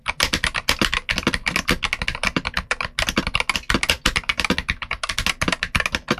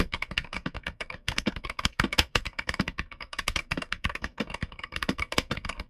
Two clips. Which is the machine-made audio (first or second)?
second